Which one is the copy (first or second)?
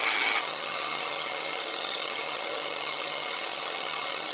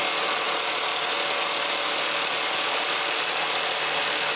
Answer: first